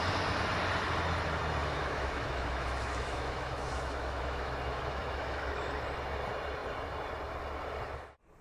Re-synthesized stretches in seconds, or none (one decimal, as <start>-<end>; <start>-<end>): 1.6-5.7